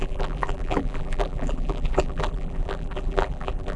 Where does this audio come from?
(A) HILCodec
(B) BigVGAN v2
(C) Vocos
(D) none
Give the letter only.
B